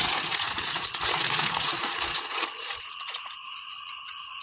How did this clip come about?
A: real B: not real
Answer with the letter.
B